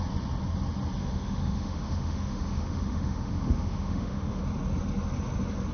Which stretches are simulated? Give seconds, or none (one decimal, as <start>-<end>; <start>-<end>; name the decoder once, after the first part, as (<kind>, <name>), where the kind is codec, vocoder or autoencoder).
1.0-4.4 (autoencoder, DAC-VAE)